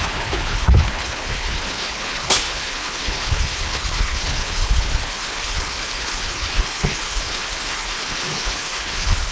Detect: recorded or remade remade